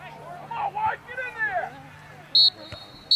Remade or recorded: recorded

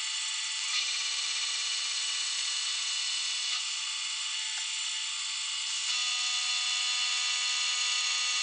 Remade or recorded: recorded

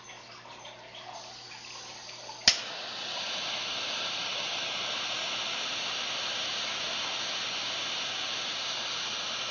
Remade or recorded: recorded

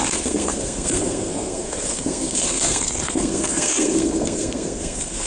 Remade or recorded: remade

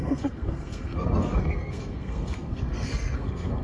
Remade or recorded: remade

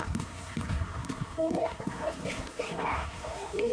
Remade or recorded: remade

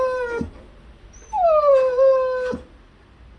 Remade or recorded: recorded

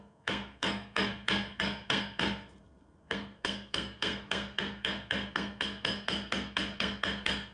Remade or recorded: remade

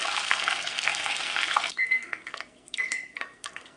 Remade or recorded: remade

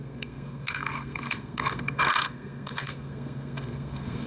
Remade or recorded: remade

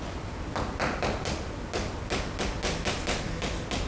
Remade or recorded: recorded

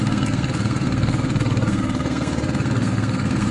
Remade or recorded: remade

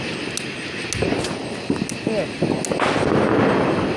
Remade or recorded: recorded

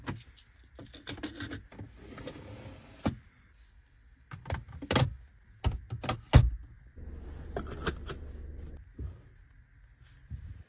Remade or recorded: recorded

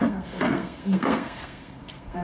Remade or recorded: remade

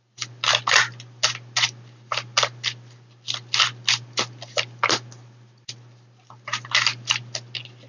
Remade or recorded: recorded